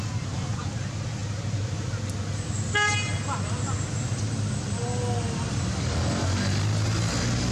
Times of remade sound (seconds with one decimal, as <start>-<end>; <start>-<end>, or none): none